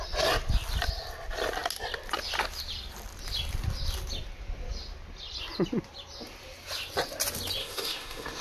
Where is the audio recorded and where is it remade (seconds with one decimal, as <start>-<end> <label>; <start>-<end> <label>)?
0.0-7.6 recorded; 7.6-8.4 remade